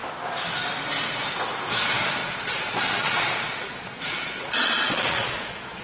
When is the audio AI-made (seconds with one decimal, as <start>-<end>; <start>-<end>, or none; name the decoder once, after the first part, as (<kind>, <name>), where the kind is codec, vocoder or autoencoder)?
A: 2.2-5.8 (vocoder, Vocos)

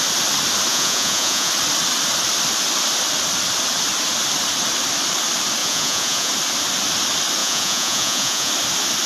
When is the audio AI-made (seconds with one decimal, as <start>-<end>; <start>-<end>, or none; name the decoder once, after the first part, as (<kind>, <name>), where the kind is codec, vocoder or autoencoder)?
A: 0.7-1.5 (vocoder, Vocos); 5.6-6.3; 7.4-8.5